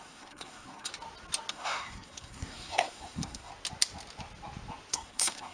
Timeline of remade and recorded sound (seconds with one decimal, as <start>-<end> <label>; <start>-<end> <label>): 0.0-0.9 remade; 0.9-1.5 recorded; 1.5-3.5 remade; 3.5-4.9 recorded; 4.9-5.5 remade